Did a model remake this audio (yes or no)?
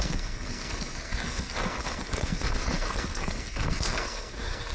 yes